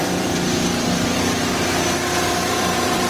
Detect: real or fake fake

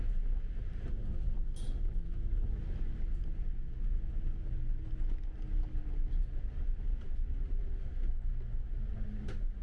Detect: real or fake real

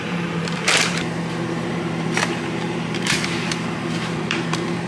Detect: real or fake fake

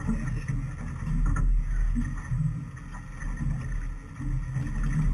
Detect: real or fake real